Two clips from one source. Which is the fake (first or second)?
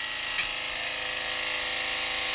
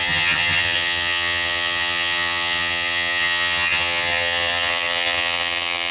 second